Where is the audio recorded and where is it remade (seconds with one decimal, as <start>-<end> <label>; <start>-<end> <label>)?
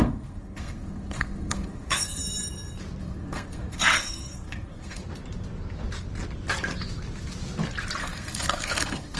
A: 0.0-2.2 remade; 2.2-3.0 recorded; 3.0-5.0 remade; 5.0-8.0 recorded; 8.0-9.2 remade